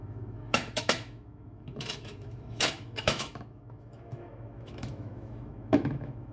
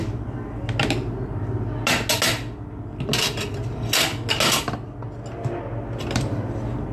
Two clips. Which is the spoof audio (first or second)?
first